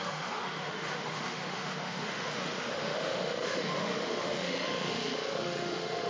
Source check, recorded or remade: remade